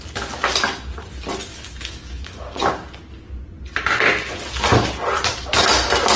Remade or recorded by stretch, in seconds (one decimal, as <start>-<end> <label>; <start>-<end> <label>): 0.0-1.5 recorded; 1.5-2.7 remade; 2.7-6.2 recorded